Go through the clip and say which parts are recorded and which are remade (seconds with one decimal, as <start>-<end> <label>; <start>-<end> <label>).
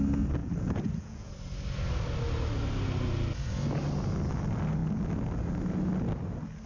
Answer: 0.0-0.4 recorded; 0.4-1.3 remade; 1.3-6.7 recorded